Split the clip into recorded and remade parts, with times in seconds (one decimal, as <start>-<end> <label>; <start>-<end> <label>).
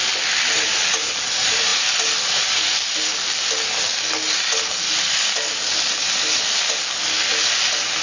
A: 0.0-8.0 recorded